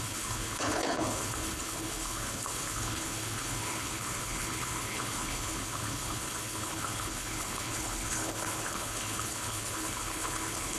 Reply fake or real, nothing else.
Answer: fake